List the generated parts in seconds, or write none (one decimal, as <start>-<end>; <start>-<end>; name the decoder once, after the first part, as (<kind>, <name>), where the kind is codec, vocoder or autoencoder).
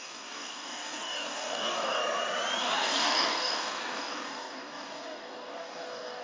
0.0-2.0 (codec, DAC); 2.6-6.2